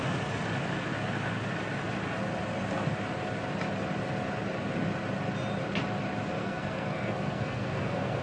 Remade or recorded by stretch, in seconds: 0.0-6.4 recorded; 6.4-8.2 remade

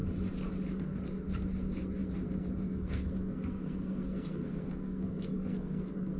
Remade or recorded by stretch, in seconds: 0.0-0.7 recorded; 0.7-6.2 remade

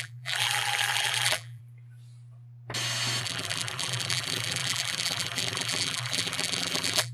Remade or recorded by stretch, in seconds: 0.0-1.6 remade; 1.6-3.2 recorded; 3.2-7.1 remade

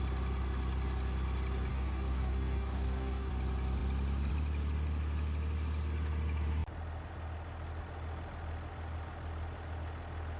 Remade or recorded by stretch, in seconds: 0.0-1.7 recorded; 1.7-3.3 remade; 3.3-10.4 recorded